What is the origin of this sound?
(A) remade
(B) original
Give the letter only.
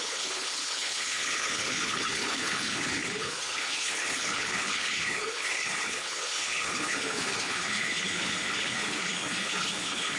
A